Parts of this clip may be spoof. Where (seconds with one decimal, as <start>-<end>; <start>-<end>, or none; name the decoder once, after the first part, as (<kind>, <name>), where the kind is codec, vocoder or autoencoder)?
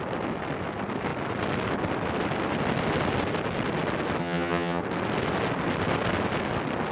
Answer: 4.2-4.8 (vocoder, HiFi-GAN)